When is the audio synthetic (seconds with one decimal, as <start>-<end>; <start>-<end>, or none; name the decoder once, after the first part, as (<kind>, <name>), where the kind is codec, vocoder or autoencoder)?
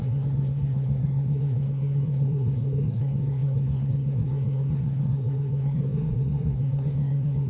0.0-7.5 (codec, SNAC)